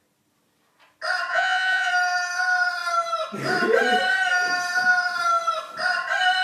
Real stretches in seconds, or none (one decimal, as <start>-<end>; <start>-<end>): 0.0-1.3; 1.9-6.4